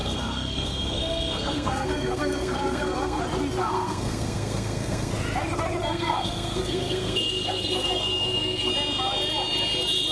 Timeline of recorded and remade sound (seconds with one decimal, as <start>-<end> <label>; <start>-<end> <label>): 0.0-3.2 remade; 3.2-3.6 recorded; 3.6-5.1 remade; 5.1-5.8 recorded; 5.8-8.7 remade; 8.7-10.1 recorded

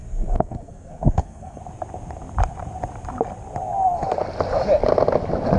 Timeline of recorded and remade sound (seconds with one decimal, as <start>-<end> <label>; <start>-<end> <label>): 0.0-1.6 remade; 1.6-5.6 recorded

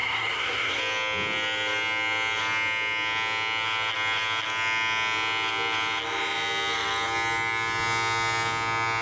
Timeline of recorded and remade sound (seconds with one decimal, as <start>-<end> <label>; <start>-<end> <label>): 0.0-0.8 remade; 0.8-9.0 recorded

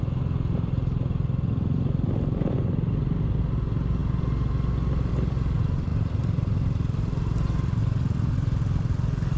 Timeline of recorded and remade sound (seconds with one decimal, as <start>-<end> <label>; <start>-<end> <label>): 0.0-9.4 recorded

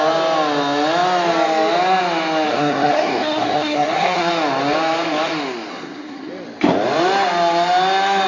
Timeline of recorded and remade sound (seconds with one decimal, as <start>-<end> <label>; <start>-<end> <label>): 0.0-2.5 recorded; 2.5-4.3 remade; 4.3-5.7 recorded; 5.7-6.3 remade; 6.3-8.3 recorded

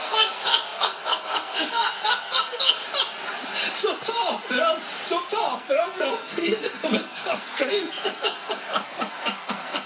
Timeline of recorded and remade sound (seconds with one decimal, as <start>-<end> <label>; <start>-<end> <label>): 0.0-2.8 remade; 2.8-5.4 recorded; 5.4-9.9 remade

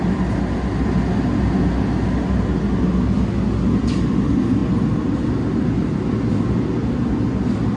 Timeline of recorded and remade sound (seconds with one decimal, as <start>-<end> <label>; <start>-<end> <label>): 0.0-7.8 recorded